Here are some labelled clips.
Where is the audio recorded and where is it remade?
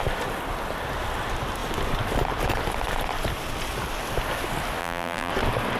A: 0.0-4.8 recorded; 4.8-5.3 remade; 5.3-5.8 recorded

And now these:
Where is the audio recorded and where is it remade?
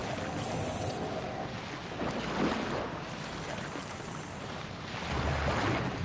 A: 0.0-6.0 recorded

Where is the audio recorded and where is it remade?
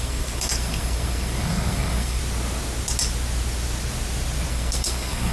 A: 0.0-2.2 remade; 2.2-4.5 recorded; 4.5-5.3 remade